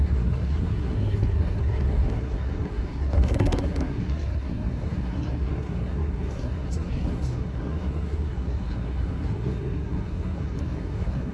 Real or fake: fake